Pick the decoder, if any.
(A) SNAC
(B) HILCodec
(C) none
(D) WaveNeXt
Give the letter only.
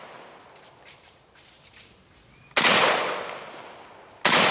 C